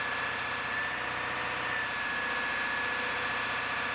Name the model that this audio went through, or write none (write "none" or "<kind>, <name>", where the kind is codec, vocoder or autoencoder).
none